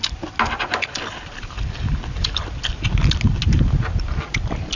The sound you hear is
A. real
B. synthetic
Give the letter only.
A